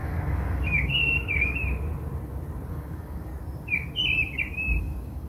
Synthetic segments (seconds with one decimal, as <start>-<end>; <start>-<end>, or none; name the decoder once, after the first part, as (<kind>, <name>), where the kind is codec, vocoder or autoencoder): 0.0-1.6 (codec, DAC); 2.7-3.3; 4.8-5.3